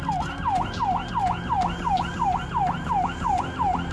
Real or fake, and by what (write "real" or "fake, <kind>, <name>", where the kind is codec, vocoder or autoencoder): real